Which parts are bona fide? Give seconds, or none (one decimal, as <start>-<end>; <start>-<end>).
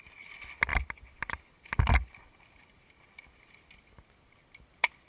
0.0-5.1